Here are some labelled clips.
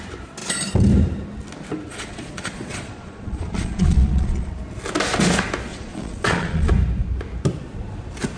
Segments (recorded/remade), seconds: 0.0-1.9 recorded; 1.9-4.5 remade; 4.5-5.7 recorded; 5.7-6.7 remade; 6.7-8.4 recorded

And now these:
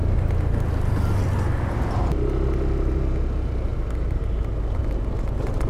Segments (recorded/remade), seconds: 0.0-5.7 recorded

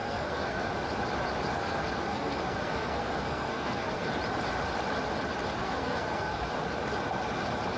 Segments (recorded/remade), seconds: 0.0-0.7 remade; 0.7-1.5 recorded; 1.5-4.1 remade; 4.1-5.6 recorded; 5.6-6.5 remade; 6.5-7.8 recorded